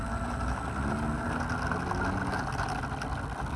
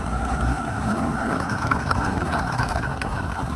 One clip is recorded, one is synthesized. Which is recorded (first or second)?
first